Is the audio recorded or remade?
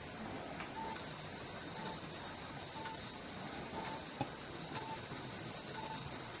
recorded